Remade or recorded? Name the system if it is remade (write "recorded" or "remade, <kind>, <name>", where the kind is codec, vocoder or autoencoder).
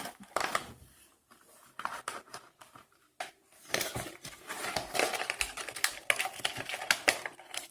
recorded